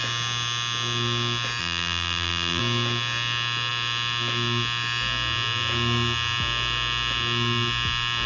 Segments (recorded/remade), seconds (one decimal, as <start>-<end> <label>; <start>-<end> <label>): 0.0-1.6 recorded; 1.6-2.6 remade; 2.6-8.3 recorded